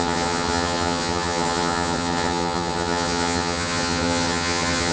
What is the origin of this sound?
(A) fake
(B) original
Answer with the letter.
A